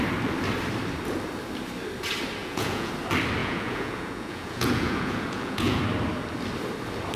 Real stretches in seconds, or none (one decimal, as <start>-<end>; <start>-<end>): 0.0-2.4; 2.9-3.4; 5.8-7.2